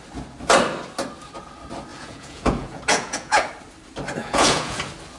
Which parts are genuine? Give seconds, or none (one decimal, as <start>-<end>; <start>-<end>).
0.0-1.9; 3.5-4.2; 4.8-5.2